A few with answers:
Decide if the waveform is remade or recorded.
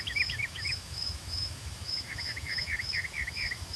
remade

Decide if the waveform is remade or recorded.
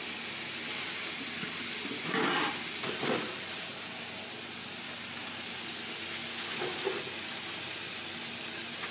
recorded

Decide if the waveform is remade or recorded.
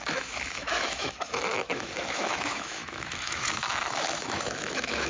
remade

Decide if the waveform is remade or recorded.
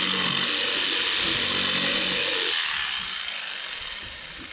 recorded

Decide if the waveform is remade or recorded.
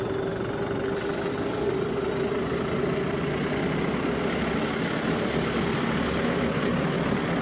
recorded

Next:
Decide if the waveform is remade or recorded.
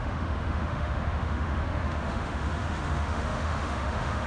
remade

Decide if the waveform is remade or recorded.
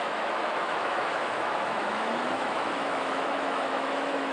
remade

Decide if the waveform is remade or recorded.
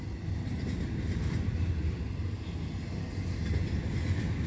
recorded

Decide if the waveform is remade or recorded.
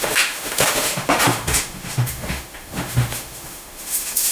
remade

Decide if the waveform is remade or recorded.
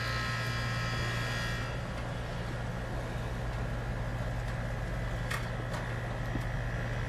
recorded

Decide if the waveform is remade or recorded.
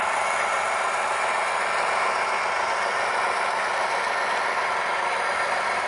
recorded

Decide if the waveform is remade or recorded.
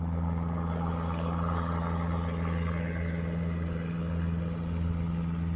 recorded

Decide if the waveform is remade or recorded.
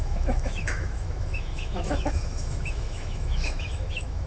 remade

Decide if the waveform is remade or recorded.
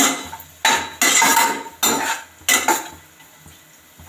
recorded